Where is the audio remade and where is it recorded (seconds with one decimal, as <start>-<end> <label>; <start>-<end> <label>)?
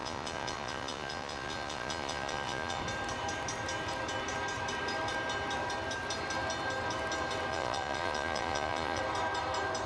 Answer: 0.0-2.8 remade; 2.8-7.5 recorded; 7.5-9.0 remade; 9.0-9.9 recorded